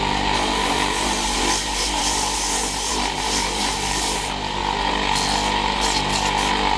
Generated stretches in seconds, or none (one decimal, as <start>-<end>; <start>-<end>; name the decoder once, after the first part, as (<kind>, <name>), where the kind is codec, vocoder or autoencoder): 0.0-4.6 (vocoder, BigVGAN v2)

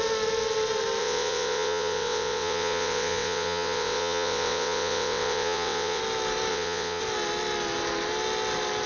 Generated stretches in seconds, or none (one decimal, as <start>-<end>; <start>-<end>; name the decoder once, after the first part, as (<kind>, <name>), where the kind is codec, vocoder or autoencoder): 1.0-6.0 (vocoder, WaveNeXt); 6.5-7.0

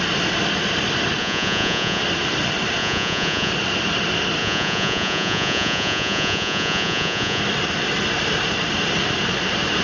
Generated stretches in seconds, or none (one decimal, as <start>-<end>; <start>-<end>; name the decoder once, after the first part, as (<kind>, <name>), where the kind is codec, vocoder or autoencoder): 1.2-2.0 (vocoder, Vocos); 2.8-3.5; 4.4-7.4

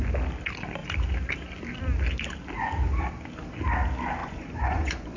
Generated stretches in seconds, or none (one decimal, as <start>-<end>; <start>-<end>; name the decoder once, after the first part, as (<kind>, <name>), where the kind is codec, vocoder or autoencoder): 4.2-5.2 (vocoder, Vocos)

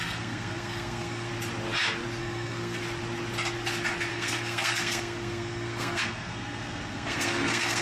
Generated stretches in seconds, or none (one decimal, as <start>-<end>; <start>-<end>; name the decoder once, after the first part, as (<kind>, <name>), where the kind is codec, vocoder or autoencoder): 0.0-1.3 (codec, SNAC); 2.2-2.8; 4.1-7.8